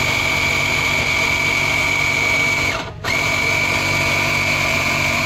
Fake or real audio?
fake